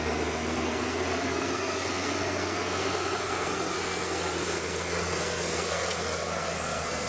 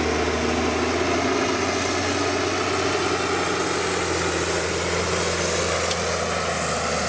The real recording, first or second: second